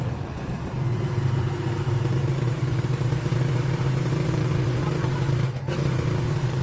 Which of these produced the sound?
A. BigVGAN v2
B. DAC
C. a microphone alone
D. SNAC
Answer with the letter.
A